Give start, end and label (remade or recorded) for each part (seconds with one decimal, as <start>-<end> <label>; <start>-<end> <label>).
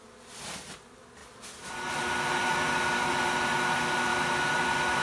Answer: 0.0-5.0 recorded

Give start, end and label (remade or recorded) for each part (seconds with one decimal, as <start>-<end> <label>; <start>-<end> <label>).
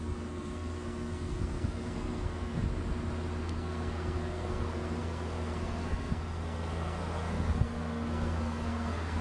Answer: 0.0-2.6 remade; 2.6-3.4 recorded; 3.4-9.2 remade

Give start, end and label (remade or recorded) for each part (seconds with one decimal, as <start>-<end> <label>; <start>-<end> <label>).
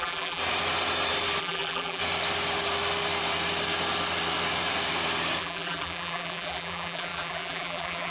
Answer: 0.0-0.4 remade; 0.4-1.4 recorded; 1.4-2.0 remade; 2.0-5.4 recorded; 5.4-8.1 remade